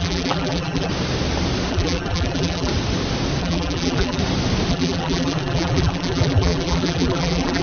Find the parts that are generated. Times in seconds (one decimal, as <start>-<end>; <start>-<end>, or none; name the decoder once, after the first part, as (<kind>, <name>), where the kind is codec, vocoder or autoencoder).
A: 0.0-0.9 (vocoder, BigVGAN v2); 1.7-2.7; 3.4-4.2; 4.7-7.6